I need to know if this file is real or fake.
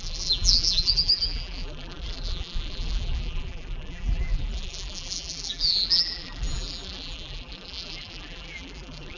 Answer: fake